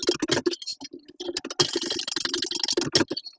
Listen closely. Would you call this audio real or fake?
real